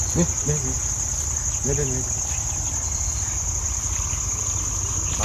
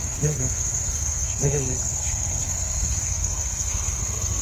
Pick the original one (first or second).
first